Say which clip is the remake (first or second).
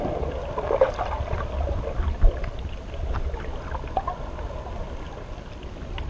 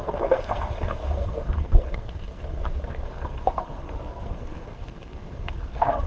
second